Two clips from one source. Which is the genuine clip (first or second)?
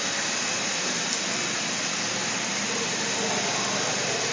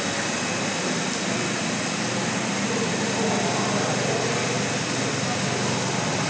second